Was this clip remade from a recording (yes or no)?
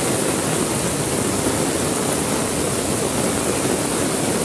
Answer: no